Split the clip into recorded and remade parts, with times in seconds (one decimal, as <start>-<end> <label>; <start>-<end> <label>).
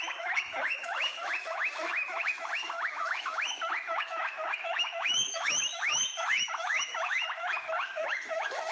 0.0-8.7 remade